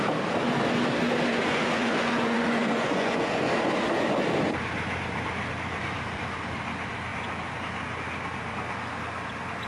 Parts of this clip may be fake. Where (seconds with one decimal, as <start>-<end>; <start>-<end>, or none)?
1.3-3.5